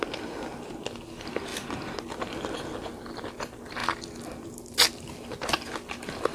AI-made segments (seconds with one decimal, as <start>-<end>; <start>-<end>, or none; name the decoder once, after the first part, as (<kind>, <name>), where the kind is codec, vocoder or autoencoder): none